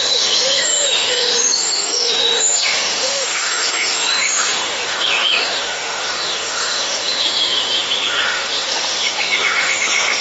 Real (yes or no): no